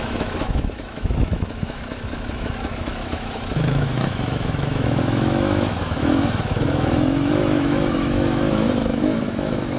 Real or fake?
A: fake